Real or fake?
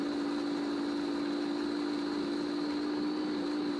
real